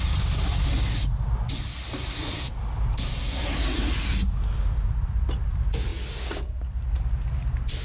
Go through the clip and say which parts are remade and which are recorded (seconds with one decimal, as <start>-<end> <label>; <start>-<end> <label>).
0.0-7.8 recorded